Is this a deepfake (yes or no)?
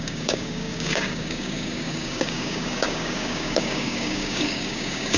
yes